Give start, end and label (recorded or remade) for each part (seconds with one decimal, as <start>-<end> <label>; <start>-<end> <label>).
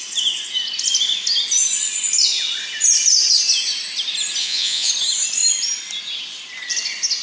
0.0-4.4 recorded; 4.4-4.9 remade; 4.9-7.2 recorded